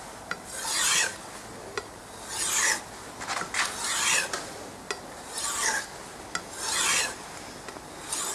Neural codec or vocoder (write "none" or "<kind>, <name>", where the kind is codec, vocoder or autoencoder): none